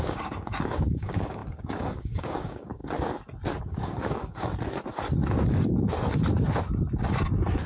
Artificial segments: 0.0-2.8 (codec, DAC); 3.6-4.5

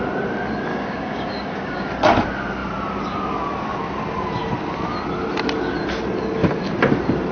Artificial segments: 0.7-1.9 (codec, DAC)

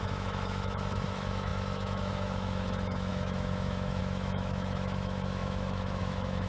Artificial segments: 0.0-6.5 (autoencoder, DAC-VAE)

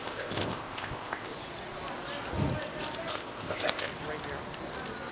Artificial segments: 0.0-1.3 (codec, ZipCodec); 3.1-3.9